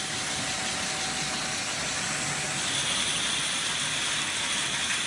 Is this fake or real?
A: real